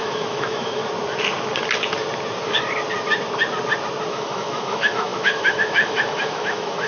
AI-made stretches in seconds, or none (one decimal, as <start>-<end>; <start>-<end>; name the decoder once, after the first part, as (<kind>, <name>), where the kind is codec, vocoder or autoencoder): 0.0-0.8 (autoencoder, DAC-VAE); 4.1-6.9